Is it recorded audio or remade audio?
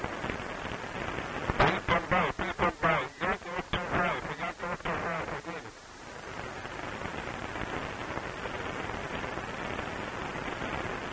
recorded